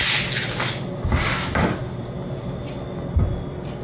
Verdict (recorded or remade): recorded